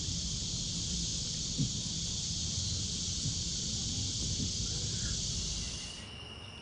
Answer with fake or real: real